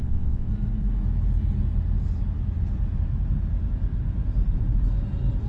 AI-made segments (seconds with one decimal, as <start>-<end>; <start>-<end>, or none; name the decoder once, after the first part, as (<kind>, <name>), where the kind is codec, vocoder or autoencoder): 0.0-0.5 (vocoder, WaveNeXt)